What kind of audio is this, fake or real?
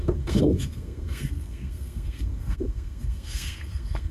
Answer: fake